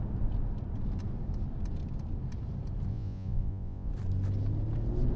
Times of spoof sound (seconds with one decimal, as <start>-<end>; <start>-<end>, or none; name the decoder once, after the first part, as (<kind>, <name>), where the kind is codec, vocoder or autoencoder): 2.9-3.9 (vocoder, Vocos)